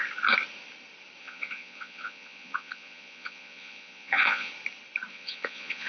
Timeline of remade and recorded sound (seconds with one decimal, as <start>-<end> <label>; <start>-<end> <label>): 0.0-1.2 recorded; 1.2-4.5 remade; 4.5-5.1 recorded; 5.1-5.9 remade